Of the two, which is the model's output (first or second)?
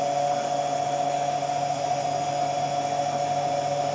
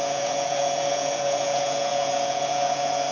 second